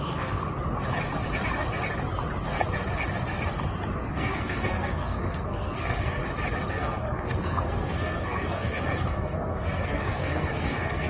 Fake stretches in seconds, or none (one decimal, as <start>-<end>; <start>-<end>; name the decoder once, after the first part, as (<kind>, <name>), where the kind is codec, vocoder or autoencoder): 0.0-0.4 (codec, SNAC); 4.1-6.2; 6.7-11.1